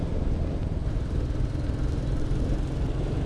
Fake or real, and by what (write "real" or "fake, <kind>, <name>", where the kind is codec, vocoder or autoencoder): real